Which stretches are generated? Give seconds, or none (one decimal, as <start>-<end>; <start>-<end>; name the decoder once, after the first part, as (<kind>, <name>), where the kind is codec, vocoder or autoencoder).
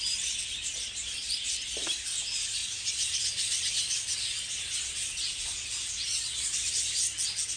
2.6-6.8 (vocoder, Vocos)